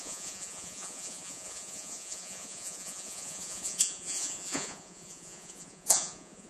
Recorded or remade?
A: remade